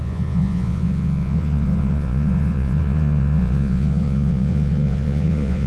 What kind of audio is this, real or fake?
fake